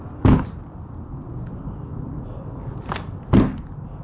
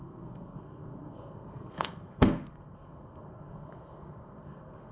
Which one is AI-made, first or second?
second